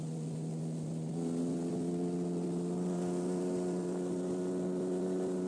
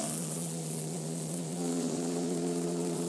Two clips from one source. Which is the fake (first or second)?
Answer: second